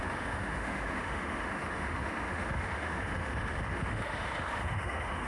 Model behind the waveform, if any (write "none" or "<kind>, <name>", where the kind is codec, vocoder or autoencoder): autoencoder, DAC-VAE